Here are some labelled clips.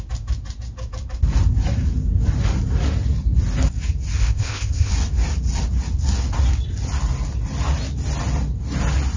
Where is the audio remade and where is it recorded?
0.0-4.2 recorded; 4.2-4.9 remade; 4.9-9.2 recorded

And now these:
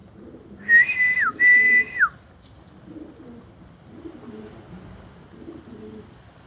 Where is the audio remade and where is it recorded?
0.0-6.5 recorded

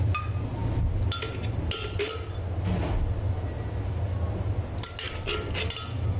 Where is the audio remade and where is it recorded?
0.0-6.2 recorded

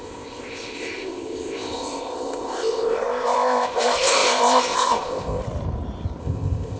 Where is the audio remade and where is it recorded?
0.0-5.4 remade; 5.4-6.2 recorded; 6.2-6.8 remade

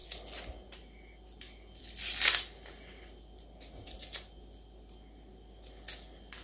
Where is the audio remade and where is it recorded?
0.0-6.4 recorded